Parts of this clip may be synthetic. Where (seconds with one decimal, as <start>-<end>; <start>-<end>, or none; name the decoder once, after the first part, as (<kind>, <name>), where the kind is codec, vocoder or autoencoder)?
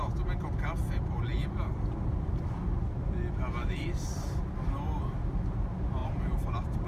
1.3-2.6 (vocoder, BigVGAN v2); 3.6-4.4